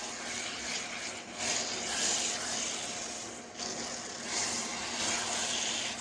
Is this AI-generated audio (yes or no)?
no